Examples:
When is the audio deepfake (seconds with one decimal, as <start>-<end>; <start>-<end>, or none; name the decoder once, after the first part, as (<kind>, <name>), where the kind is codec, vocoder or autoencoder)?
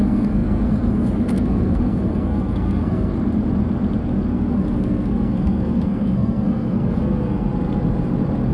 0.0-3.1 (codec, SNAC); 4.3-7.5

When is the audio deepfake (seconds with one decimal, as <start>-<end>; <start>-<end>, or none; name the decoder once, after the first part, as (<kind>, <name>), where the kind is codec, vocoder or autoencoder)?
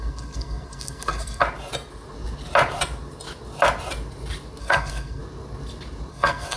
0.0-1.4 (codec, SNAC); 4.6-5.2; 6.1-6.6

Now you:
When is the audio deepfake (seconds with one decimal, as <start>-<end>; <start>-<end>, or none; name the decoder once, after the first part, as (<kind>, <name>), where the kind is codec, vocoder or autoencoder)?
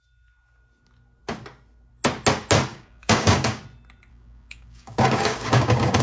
2.7-3.6 (codec, DAC); 4.1-6.0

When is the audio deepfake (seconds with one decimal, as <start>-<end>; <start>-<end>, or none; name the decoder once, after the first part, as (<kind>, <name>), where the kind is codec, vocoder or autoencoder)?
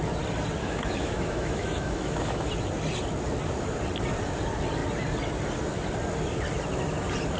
0.6-2.5 (autoencoder, DAC-VAE)